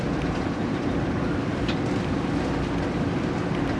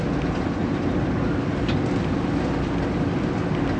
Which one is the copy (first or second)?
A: first